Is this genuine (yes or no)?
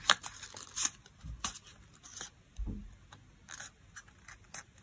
yes